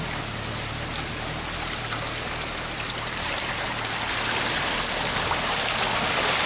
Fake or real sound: real